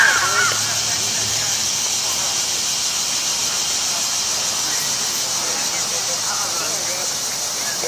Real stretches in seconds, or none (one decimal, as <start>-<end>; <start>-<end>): 0.0-1.3; 1.9-7.9

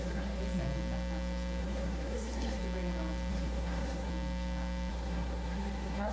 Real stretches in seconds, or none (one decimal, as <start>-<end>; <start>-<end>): 0.4-1.6; 2.6-3.3; 4.1-4.9

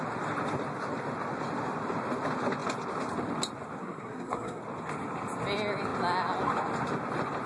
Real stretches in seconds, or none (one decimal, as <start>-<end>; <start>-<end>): 0.0-3.8; 4.6-7.5

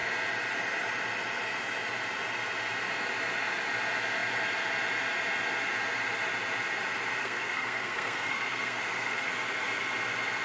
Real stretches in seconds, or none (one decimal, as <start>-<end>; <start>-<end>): 0.0-7.2; 9.3-10.4

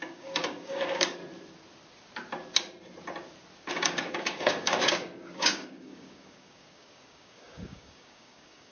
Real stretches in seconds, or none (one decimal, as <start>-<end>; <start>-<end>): 1.2-3.7

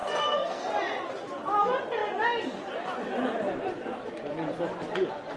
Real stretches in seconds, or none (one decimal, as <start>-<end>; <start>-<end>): 0.7-5.4

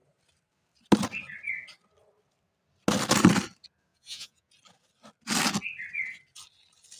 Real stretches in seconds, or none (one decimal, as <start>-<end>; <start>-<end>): 0.0-3.9; 4.5-7.0

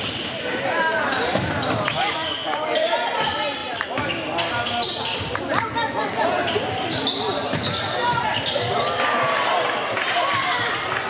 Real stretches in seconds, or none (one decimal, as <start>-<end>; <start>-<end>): 0.0-11.1